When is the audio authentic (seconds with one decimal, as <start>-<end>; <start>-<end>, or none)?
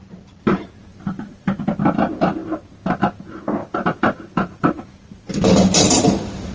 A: 0.0-0.9; 1.5-3.6